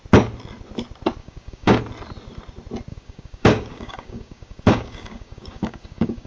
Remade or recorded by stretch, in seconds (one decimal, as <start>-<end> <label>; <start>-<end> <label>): 0.0-1.2 recorded; 1.2-1.8 remade; 1.8-2.9 recorded; 2.9-6.3 remade